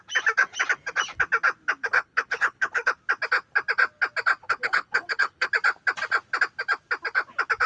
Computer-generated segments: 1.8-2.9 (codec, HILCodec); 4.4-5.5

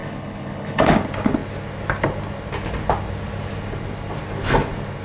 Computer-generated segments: 0.0-0.9 (codec, HILCodec)

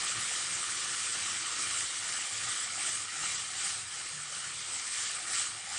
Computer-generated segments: 0.0-3.3 (codec, HILCodec); 4.0-5.8